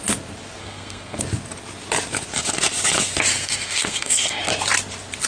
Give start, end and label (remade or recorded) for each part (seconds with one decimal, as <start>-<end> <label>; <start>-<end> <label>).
0.0-0.6 recorded; 0.6-1.2 remade; 1.2-3.3 recorded; 3.3-4.4 remade; 4.4-5.3 recorded